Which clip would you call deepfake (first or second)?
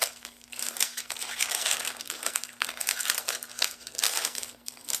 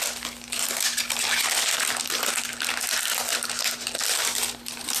first